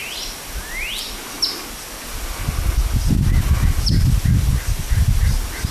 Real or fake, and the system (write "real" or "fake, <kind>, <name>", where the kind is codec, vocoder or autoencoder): real